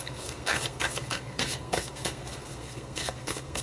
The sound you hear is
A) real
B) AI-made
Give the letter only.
B